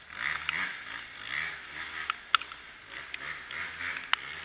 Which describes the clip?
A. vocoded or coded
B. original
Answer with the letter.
B